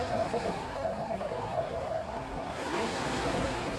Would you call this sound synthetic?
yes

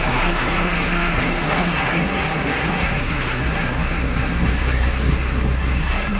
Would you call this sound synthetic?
yes